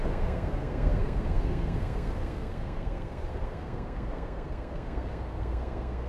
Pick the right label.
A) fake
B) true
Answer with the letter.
A